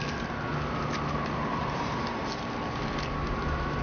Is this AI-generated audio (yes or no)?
no